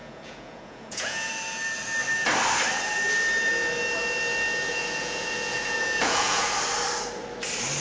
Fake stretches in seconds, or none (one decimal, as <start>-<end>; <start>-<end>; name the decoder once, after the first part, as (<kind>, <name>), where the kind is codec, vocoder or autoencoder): 0.0-1.3 (vocoder, Vocos); 4.7-6.5